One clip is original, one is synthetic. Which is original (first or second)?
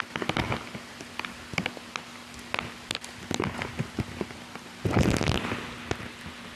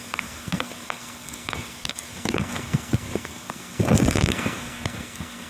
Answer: first